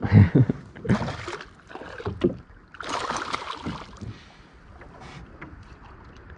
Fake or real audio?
real